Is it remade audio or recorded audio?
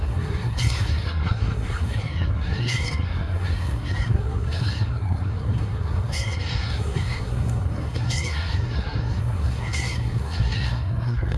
remade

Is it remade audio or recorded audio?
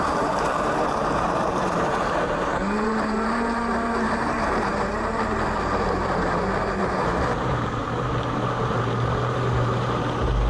remade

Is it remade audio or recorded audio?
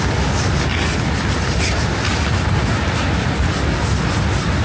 recorded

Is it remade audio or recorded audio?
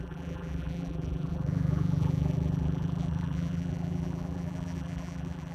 remade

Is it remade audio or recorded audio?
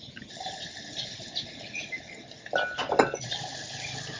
recorded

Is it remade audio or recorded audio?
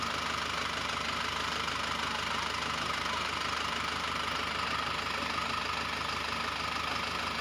recorded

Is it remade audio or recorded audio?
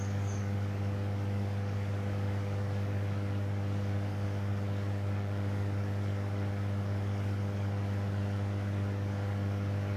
remade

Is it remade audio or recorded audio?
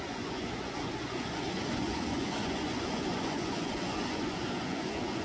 remade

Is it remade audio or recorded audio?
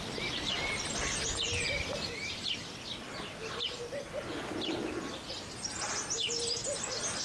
recorded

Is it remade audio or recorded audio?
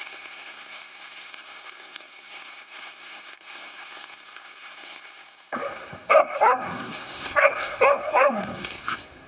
remade